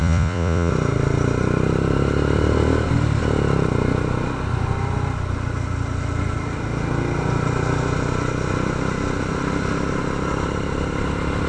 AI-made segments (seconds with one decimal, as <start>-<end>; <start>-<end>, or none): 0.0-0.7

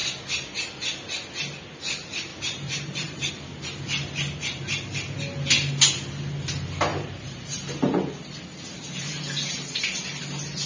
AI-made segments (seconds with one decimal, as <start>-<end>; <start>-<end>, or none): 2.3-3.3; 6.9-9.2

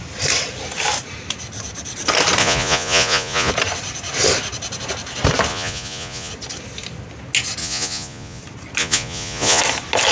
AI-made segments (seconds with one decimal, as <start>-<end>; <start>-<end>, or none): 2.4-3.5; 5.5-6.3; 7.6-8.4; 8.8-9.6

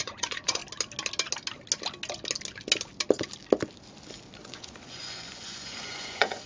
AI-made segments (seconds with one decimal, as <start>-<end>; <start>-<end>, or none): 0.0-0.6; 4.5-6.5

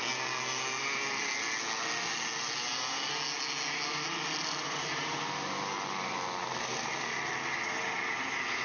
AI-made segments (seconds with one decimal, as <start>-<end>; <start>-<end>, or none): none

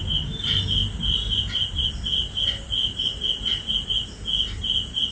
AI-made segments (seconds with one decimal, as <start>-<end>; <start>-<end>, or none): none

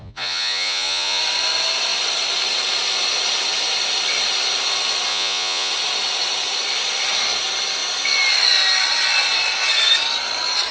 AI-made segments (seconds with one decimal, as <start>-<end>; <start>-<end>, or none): 0.0-1.2; 5.1-5.7

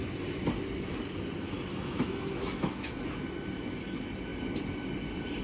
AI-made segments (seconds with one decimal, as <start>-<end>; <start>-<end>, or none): 1.7-3.0